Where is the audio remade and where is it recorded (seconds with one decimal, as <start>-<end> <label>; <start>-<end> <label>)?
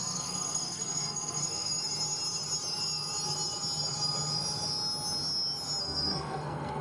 0.0-1.7 remade; 1.7-5.8 recorded; 5.8-6.8 remade